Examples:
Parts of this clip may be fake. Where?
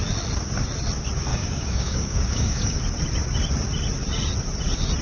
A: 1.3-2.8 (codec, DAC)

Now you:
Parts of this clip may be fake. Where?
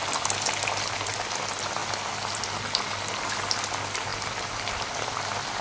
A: none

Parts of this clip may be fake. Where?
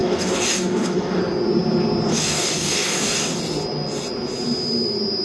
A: 0.0-1.2 (codec, DAC); 2.1-3.4